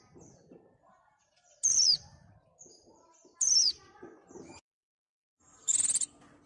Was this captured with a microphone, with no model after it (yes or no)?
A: yes